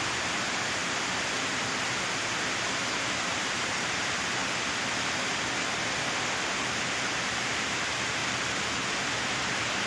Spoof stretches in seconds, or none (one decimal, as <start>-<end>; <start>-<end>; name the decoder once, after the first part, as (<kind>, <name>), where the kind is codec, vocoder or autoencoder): 0.0-0.8 (vocoder, BigVGAN v2); 1.4-4.4; 6.5-8.2; 9.1-9.9